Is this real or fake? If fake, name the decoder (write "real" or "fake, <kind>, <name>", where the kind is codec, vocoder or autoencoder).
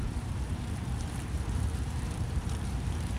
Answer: fake, vocoder, BigVGAN v2